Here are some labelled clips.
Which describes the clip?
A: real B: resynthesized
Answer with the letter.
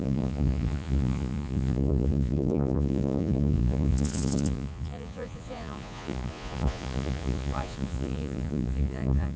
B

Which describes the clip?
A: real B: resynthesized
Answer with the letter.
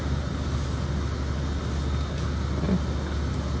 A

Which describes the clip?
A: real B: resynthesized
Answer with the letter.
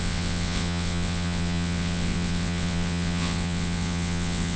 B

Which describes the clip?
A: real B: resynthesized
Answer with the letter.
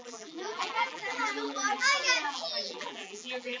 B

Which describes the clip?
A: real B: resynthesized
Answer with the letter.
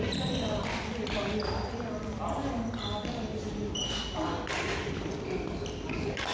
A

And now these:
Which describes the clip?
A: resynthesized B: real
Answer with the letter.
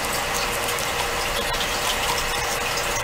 B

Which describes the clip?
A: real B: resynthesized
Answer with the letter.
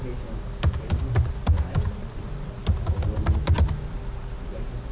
A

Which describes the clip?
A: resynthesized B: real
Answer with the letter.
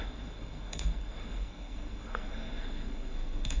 A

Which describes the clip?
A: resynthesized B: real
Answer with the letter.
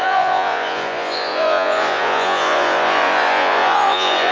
A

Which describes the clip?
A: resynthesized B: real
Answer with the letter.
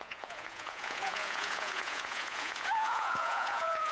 A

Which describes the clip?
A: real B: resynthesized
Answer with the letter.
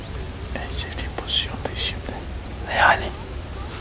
A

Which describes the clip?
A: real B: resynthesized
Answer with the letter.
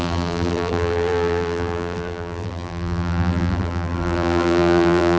B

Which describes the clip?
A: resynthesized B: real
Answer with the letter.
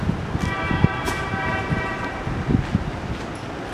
B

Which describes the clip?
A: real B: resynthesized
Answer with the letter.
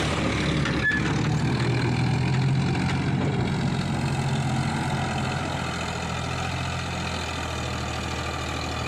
A